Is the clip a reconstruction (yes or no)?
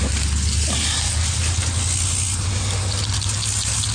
no